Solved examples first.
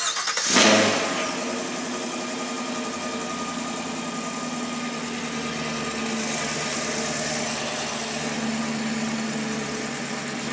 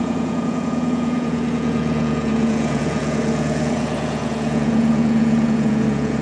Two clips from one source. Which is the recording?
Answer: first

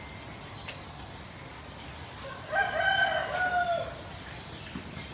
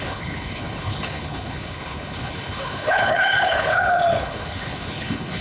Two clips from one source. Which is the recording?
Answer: first